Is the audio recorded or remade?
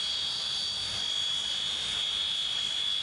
recorded